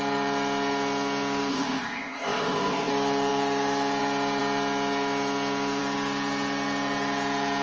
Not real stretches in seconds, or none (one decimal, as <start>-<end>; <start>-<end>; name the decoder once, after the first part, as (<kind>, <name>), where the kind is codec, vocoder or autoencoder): 1.5-2.9 (codec, ZipCodec)